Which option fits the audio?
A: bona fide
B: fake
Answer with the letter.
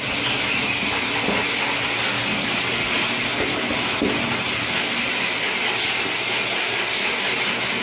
A